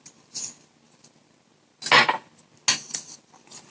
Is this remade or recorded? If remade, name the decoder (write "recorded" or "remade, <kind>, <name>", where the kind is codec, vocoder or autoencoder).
recorded